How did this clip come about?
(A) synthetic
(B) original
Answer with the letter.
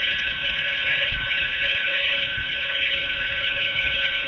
A